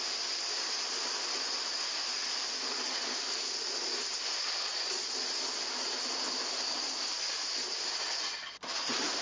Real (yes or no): yes